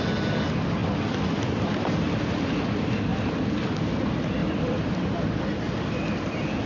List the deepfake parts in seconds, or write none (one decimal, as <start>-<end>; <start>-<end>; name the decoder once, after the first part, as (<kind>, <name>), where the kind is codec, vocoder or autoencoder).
4.4-5.4 (vocoder, BigVGAN v2)